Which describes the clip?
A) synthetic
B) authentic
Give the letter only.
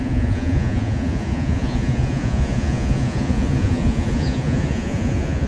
A